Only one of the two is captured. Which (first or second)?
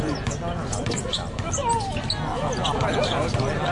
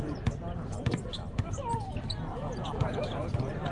first